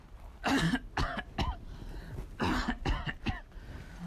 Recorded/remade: recorded